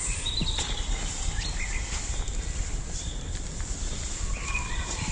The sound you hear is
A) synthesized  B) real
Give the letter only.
A